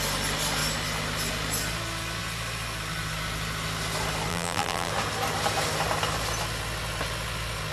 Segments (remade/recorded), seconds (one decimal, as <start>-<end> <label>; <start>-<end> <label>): 0.0-4.3 recorded; 4.3-4.9 remade; 4.9-7.7 recorded